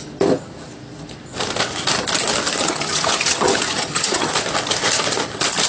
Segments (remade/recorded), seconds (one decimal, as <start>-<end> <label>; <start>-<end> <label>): 0.0-2.6 recorded; 2.6-4.3 remade; 4.3-5.7 recorded